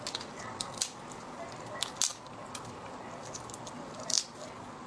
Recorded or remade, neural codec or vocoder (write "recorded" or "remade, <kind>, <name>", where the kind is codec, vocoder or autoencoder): recorded